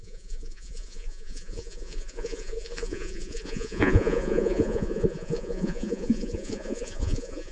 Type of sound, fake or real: fake